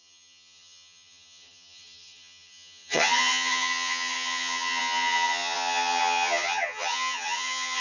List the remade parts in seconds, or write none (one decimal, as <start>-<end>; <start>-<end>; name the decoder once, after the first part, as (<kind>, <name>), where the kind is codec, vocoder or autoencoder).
0.0-7.8 (vocoder, HiFi-GAN)